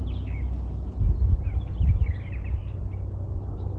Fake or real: real